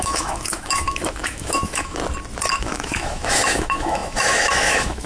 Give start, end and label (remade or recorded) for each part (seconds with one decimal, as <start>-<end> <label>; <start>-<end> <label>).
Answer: 0.0-2.0 remade; 2.0-2.5 recorded; 2.5-5.1 remade